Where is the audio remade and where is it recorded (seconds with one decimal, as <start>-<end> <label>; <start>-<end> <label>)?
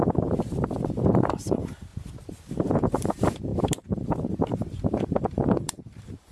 0.0-1.9 remade; 1.9-2.5 recorded; 2.5-6.3 remade